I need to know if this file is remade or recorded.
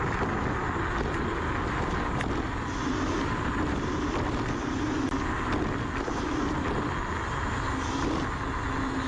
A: recorded